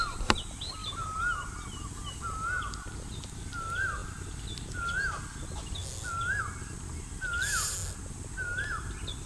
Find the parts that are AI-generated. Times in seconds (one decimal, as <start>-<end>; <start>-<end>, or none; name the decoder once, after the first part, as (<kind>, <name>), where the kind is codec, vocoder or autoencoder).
none